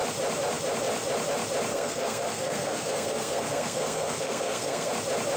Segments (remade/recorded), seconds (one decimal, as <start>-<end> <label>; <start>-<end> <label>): 0.0-1.7 recorded; 1.7-4.9 remade; 4.9-5.4 recorded